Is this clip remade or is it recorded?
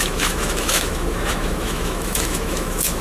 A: remade